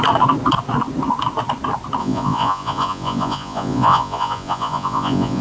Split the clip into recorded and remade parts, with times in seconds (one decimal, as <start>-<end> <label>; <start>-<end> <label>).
0.0-2.0 recorded; 2.0-5.4 remade